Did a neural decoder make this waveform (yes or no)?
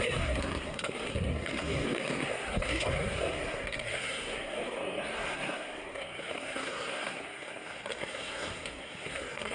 yes